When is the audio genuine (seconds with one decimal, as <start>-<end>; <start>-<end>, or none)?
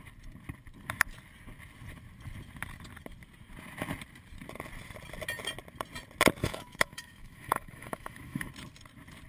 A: 0.0-6.4; 8.5-9.3